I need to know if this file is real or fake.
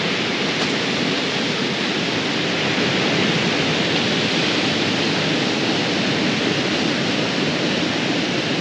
real